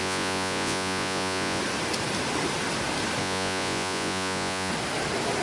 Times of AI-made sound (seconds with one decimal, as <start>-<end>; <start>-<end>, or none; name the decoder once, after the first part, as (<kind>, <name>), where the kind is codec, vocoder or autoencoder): 0.0-1.6 (vocoder, Vocos); 3.2-4.7

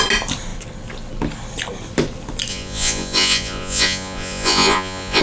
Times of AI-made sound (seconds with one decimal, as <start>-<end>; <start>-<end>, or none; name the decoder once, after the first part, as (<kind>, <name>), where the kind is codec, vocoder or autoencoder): 2.5-5.2 (vocoder, Vocos)

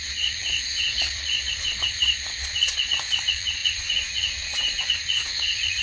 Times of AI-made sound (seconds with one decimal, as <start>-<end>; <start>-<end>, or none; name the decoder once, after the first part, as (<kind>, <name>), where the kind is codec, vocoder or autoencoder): 0.0-5.8 (vocoder, Vocos)

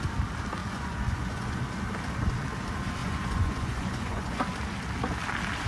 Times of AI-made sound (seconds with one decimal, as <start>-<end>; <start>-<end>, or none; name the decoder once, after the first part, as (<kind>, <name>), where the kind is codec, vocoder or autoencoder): 0.6-1.6 (vocoder, Vocos); 3.0-4.4

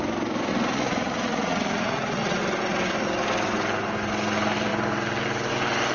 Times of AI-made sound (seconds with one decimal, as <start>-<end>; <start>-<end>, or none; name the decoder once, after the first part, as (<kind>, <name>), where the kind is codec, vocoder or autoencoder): 0.5-2.4 (vocoder, Vocos)

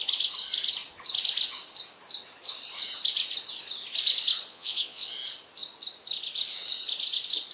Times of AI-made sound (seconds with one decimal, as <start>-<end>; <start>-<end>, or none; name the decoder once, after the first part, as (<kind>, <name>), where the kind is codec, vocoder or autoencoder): 4.5-5.1 (vocoder, Vocos)